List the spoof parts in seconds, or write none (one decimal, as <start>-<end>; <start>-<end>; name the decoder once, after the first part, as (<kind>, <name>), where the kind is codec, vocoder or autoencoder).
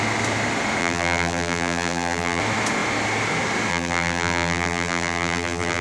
0.8-2.4 (vocoder, BigVGAN v2); 3.7-5.8